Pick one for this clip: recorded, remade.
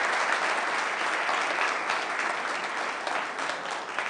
recorded